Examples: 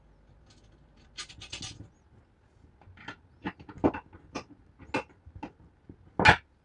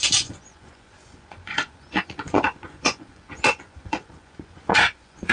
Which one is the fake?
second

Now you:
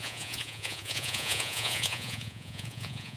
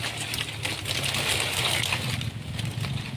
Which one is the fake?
first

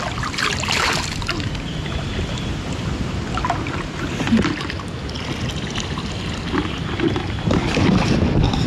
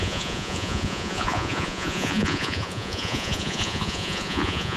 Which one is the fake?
second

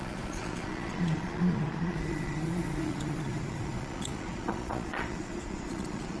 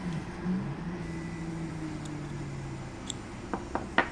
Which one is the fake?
first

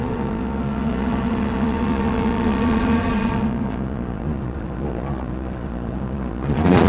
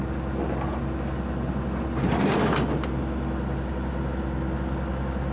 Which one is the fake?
first